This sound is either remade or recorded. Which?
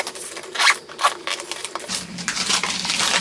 remade